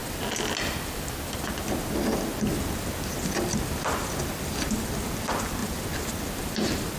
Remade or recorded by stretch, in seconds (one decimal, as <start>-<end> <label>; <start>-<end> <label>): 0.0-7.0 recorded